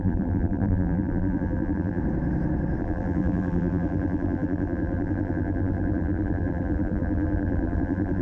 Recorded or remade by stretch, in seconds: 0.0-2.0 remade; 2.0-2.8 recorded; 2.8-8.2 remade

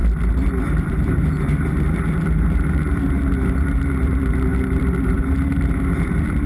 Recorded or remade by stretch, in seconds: 0.0-0.6 recorded; 0.6-6.5 remade

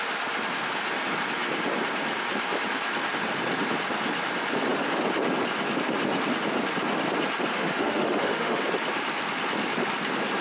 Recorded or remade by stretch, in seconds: 0.0-7.5 recorded; 7.5-8.6 remade; 8.6-10.4 recorded

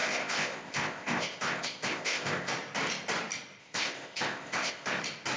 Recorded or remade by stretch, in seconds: 0.0-2.5 remade; 2.5-3.6 recorded; 3.6-5.0 remade; 5.0-5.4 recorded

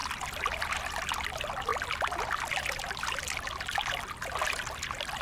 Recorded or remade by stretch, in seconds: 0.0-0.6 remade; 0.6-5.2 recorded

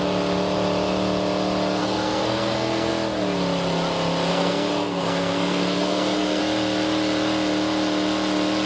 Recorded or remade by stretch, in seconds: 0.0-1.8 recorded; 1.8-2.9 remade; 2.9-4.3 recorded; 4.3-6.4 remade; 6.4-8.7 recorded

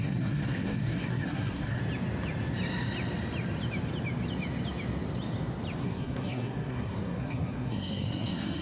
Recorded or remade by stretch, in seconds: 0.0-1.8 remade; 1.8-5.8 recorded; 5.8-8.6 remade

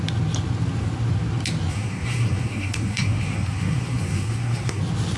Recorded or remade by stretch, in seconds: 0.0-1.7 recorded; 1.7-4.8 remade; 4.8-5.2 recorded